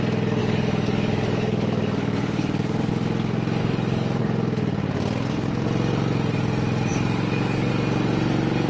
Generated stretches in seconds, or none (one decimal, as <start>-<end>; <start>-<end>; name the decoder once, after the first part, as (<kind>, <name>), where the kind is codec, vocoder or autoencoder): 0.4-2.9 (codec, DAC); 3.6-4.2; 6.9-7.7